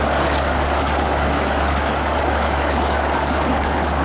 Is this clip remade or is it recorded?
remade